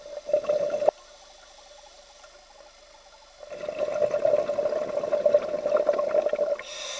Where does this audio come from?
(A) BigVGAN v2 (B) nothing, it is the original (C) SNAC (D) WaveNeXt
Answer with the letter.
B